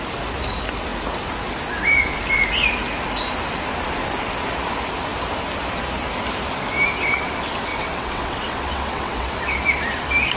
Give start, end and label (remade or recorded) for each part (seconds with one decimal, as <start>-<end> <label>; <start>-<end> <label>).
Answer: 0.0-7.7 recorded; 7.7-9.5 remade; 9.5-10.4 recorded